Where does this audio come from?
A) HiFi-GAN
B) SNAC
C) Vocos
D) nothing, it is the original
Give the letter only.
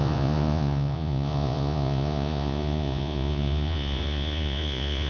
C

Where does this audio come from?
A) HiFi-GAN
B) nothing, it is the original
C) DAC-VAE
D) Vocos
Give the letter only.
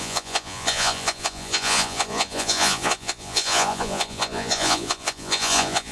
D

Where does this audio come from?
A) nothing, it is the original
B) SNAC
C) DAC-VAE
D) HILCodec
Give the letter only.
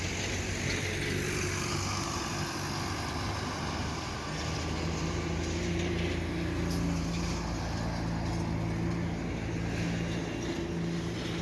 A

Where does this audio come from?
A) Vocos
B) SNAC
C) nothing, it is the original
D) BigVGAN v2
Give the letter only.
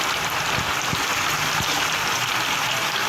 D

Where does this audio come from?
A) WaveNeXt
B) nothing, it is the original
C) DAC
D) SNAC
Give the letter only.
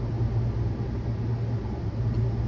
B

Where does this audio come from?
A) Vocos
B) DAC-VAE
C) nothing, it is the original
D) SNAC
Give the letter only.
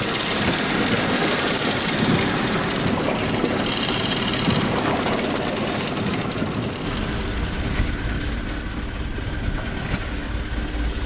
C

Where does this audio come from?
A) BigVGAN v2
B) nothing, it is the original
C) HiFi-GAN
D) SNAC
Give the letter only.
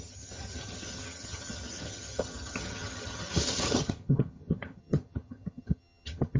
C